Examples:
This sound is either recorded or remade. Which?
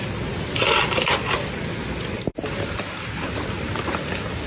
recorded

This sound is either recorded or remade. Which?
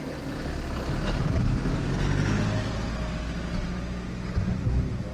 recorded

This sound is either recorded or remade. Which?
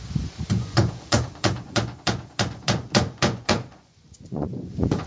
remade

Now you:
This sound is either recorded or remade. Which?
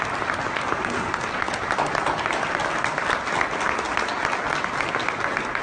recorded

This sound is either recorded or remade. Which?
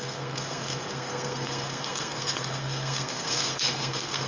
remade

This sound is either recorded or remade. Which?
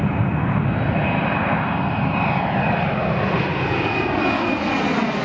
recorded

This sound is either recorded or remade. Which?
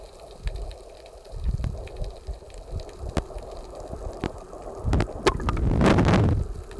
recorded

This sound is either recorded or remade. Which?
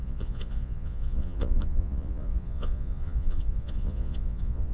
remade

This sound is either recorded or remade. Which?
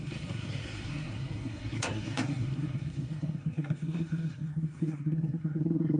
remade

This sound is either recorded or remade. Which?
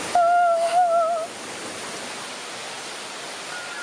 recorded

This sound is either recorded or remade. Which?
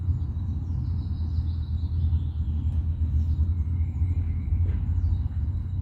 recorded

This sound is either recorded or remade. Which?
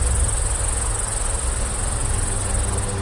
recorded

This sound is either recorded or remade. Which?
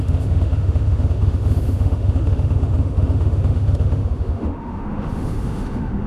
remade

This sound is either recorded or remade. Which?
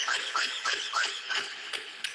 remade